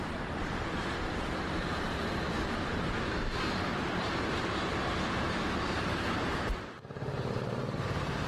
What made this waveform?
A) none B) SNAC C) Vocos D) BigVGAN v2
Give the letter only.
D